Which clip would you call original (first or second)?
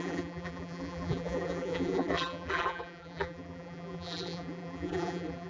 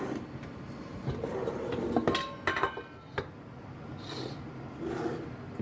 second